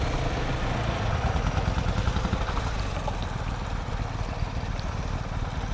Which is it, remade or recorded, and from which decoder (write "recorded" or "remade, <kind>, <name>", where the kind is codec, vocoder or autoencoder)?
recorded